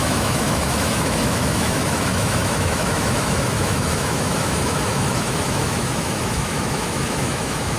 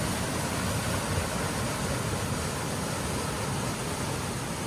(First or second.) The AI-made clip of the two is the first